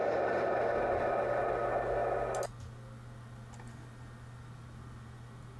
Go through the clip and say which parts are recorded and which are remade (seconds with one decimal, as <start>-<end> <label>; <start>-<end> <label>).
0.0-5.6 recorded